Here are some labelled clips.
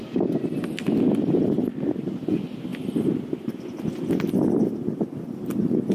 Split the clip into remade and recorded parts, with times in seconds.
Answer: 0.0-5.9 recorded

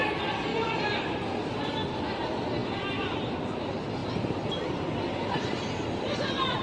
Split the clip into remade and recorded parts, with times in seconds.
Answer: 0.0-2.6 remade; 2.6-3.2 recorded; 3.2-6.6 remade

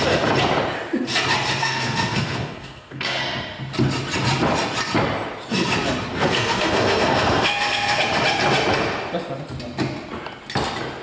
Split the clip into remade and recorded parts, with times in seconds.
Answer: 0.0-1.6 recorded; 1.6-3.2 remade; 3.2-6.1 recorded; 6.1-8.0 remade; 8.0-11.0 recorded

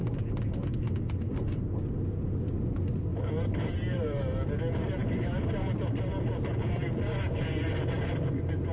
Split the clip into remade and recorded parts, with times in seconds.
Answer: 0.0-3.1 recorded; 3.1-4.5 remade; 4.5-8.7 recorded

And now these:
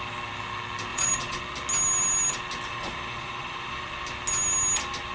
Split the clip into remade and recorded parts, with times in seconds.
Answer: 0.0-0.9 recorded; 0.9-1.4 remade; 1.4-2.7 recorded; 2.7-4.0 remade; 4.0-5.1 recorded